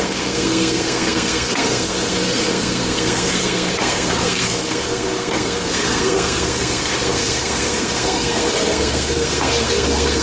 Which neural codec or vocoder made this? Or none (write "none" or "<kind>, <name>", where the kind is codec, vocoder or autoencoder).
codec, SNAC